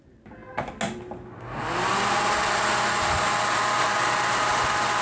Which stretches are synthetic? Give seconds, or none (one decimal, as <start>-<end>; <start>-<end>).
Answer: none